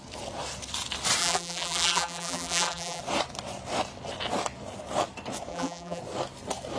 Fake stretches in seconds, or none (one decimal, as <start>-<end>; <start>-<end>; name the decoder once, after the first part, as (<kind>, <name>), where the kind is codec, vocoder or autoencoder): 1.2-3.0 (vocoder, BigVGAN v2); 5.5-6.0